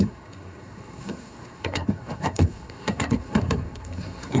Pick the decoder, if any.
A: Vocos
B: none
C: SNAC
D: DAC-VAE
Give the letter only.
C